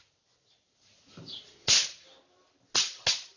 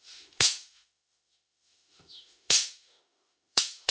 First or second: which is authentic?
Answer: first